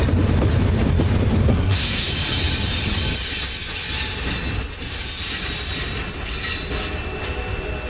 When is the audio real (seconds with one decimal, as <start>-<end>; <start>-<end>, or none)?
0.0-1.5; 2.1-7.9